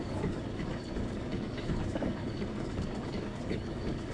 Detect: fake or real fake